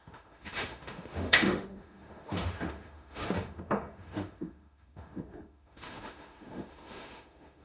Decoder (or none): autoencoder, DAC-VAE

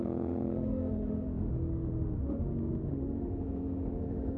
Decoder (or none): autoencoder, DAC-VAE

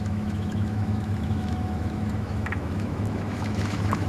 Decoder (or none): autoencoder, DAC-VAE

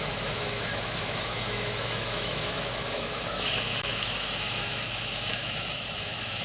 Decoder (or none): autoencoder, DAC-VAE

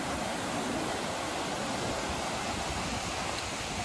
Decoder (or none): none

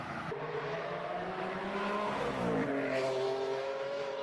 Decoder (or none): autoencoder, DAC-VAE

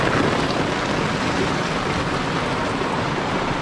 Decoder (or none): none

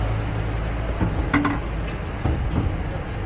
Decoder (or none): none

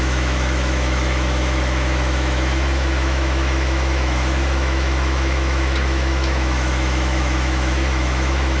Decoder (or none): autoencoder, DAC-VAE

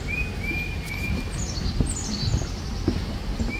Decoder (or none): none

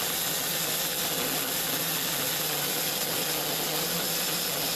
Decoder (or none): none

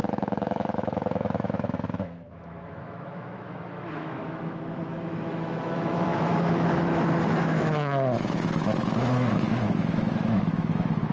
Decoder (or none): autoencoder, DAC-VAE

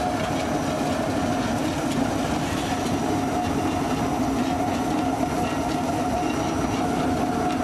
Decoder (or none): none